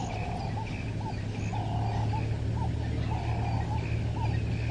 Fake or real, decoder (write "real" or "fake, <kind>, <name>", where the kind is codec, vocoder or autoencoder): real